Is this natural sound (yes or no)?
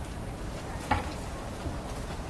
yes